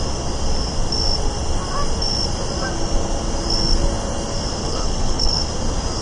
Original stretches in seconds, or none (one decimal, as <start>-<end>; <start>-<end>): 0.0-4.6; 5.4-6.0